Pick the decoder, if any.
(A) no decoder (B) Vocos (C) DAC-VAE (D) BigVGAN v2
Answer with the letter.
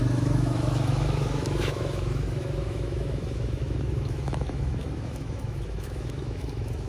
C